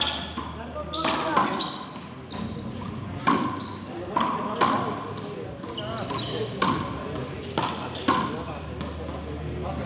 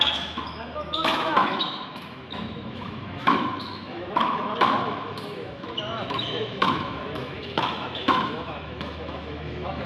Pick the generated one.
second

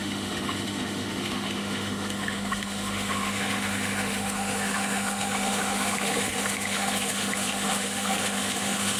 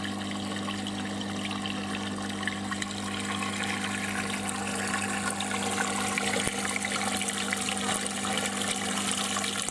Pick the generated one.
first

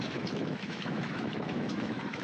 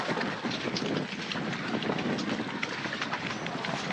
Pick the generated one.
first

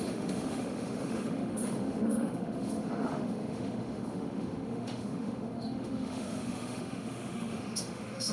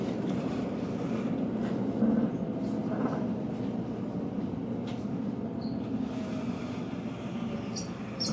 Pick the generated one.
first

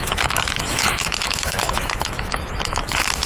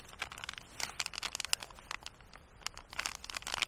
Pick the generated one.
first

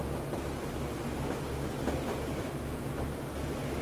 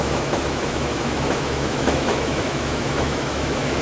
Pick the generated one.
second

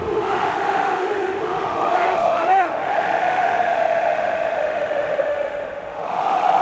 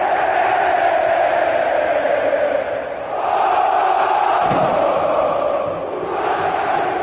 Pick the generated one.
first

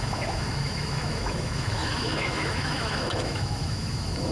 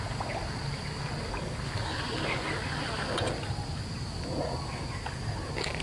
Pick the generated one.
first